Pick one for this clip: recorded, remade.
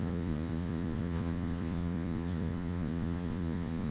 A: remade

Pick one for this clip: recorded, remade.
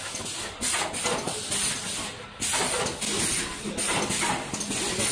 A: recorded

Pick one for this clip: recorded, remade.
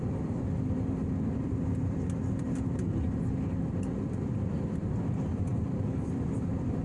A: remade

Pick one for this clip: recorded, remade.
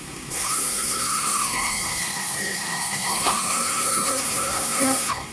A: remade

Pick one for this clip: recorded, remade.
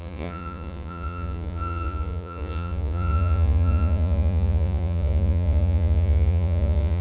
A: remade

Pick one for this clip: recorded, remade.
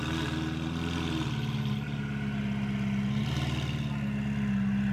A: recorded